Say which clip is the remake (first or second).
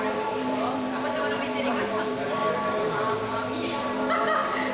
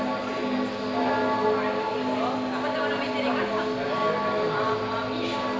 first